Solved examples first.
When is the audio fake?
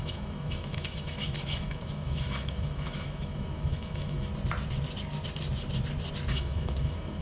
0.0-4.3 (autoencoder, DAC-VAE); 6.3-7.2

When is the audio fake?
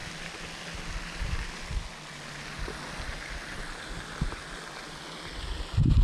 none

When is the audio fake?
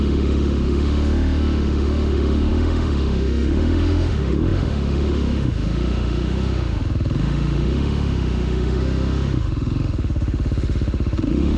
0.0-11.6 (autoencoder, DAC-VAE)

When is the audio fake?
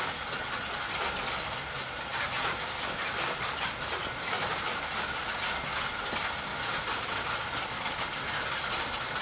none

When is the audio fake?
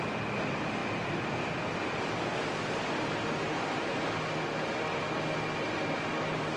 none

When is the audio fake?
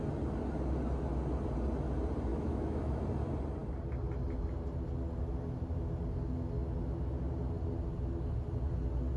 2.3-3.0 (autoencoder, DAC-VAE)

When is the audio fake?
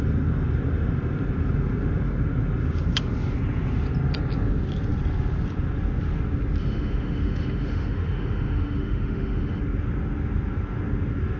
6.6-9.6 (autoencoder, DAC-VAE)